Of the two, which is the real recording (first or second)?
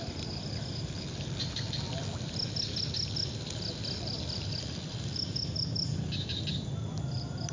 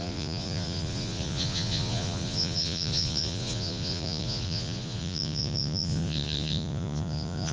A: first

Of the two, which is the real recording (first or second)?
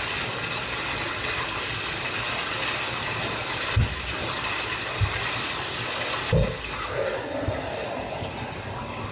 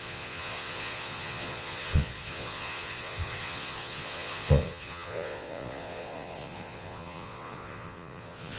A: first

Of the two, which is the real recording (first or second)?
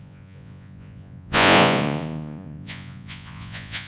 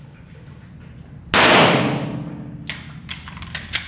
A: second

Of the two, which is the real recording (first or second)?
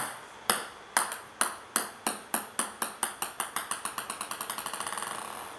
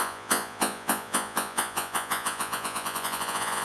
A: first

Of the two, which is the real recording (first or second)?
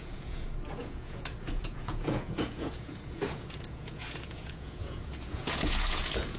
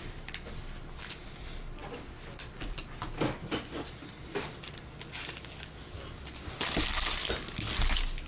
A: second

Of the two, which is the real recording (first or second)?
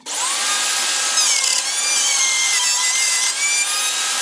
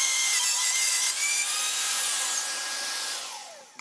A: first